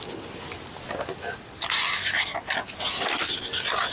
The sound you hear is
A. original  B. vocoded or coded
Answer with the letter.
A